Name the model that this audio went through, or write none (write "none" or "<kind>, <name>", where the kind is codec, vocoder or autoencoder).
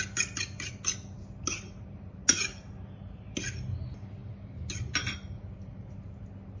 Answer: none